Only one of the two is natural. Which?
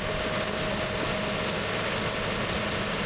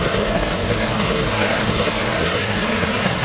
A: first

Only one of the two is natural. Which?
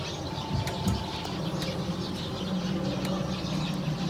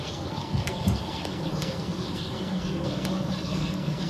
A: first